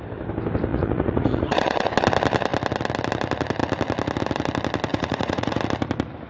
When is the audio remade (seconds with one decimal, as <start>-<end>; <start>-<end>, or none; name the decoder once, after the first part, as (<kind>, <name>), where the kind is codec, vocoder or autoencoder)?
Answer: 0.7-1.9 (vocoder, Vocos); 4.9-5.6